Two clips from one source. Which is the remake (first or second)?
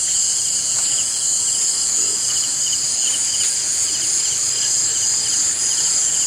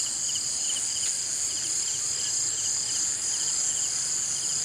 first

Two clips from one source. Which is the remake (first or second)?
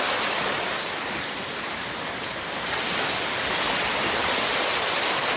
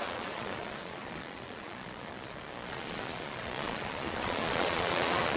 second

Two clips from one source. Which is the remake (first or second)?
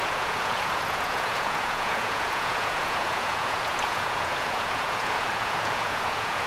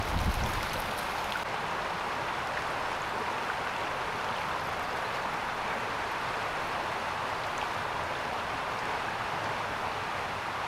first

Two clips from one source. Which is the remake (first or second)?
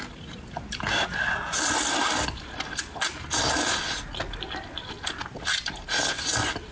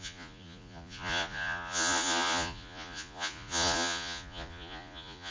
second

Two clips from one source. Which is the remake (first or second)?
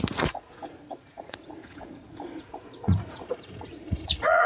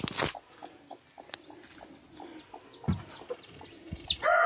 first